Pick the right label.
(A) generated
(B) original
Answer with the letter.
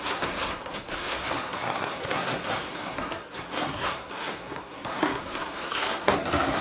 A